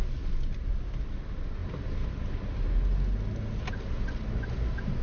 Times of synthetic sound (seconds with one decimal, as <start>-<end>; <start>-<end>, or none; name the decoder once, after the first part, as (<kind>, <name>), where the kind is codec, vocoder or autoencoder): none